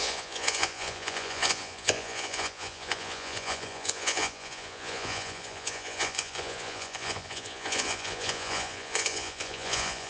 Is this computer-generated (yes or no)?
yes